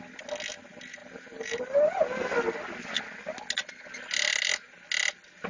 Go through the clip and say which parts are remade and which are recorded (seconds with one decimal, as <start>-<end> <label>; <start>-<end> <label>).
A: 0.0-1.0 recorded; 1.0-1.9 remade; 1.9-5.5 recorded